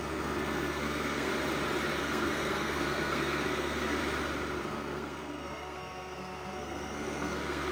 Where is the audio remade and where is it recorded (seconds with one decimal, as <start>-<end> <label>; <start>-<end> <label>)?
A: 0.0-1.3 remade; 1.3-2.0 recorded; 2.0-4.0 remade; 4.0-4.6 recorded; 4.6-7.7 remade